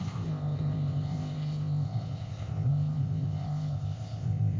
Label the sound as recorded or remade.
remade